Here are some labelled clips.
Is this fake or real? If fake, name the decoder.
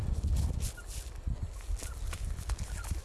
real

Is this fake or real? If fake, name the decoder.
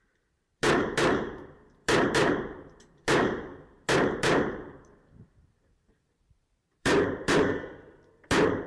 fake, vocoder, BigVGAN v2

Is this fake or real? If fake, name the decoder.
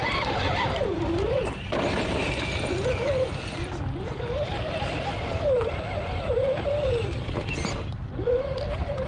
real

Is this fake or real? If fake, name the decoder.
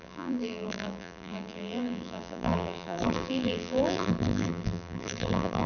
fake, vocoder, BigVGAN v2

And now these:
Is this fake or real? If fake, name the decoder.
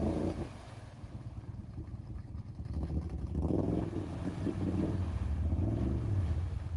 fake, vocoder, BigVGAN v2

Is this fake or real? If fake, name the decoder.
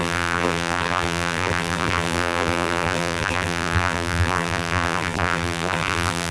fake, vocoder, BigVGAN v2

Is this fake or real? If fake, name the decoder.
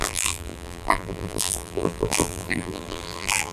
fake, vocoder, BigVGAN v2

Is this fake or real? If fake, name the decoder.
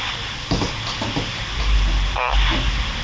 real